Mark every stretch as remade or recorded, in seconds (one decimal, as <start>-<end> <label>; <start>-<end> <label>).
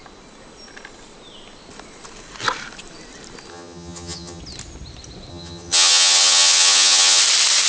0.0-3.5 recorded; 3.5-4.4 remade; 4.4-5.3 recorded; 5.3-7.2 remade; 7.2-7.7 recorded